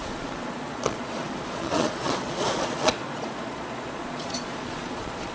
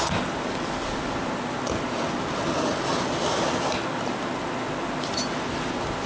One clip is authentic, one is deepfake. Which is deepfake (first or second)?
first